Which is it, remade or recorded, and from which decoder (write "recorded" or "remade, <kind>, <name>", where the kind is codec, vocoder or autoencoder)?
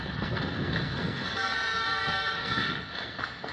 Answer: remade, codec, SNAC